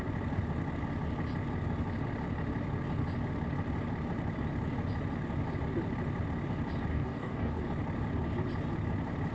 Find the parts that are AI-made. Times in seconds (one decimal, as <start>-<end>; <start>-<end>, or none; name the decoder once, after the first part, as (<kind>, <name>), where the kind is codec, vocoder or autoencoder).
6.9-7.6 (codec, DAC)